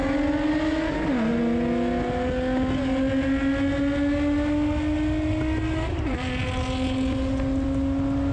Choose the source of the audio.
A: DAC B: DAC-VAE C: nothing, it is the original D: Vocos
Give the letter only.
C